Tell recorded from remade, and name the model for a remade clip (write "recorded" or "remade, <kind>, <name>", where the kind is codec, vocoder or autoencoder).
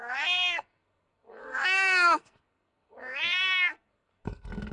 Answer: remade, codec, SNAC